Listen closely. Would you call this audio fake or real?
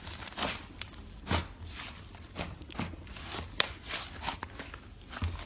real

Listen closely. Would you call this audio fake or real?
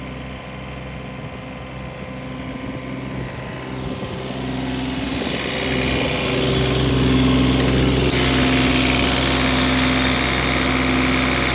real